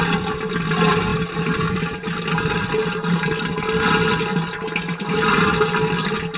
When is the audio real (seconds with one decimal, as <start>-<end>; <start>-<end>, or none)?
0.0-6.4